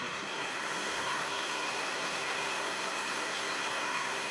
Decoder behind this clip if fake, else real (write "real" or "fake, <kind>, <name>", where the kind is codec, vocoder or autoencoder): fake, codec, SNAC